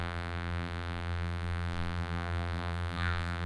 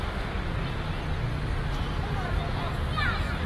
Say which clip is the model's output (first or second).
first